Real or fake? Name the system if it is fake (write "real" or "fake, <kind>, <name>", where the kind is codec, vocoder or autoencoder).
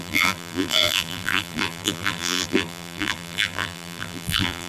fake, vocoder, BigVGAN v2